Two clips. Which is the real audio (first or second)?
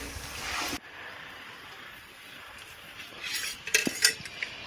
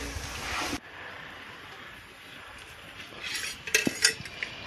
second